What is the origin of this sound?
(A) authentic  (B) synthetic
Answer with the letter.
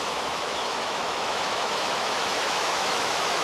B